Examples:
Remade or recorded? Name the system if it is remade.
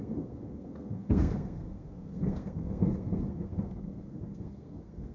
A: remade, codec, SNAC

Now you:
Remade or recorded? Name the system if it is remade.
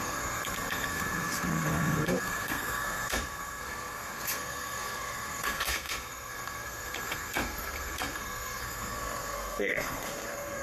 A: remade, codec, SNAC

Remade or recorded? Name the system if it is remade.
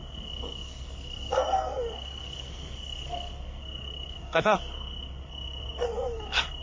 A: remade, codec, SNAC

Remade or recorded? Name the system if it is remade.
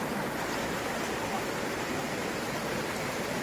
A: recorded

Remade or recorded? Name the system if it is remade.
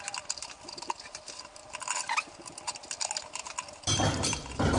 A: recorded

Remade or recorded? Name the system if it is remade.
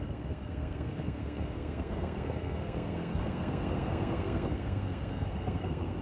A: remade, codec, SNAC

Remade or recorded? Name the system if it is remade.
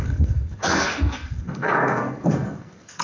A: remade, codec, SNAC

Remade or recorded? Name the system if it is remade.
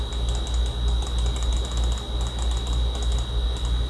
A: recorded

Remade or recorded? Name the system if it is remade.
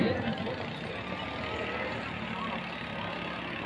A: recorded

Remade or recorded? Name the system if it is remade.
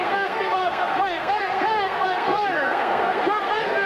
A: remade, codec, SNAC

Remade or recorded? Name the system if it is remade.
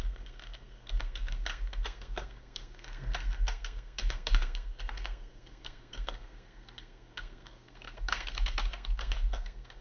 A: remade, codec, SNAC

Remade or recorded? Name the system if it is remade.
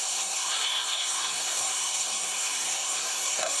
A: remade, codec, SNAC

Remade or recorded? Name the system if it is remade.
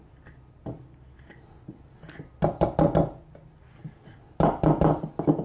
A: recorded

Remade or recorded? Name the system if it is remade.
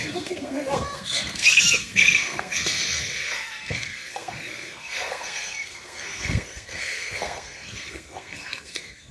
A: remade, codec, SNAC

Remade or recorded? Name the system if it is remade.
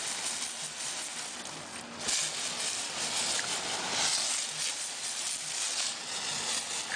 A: recorded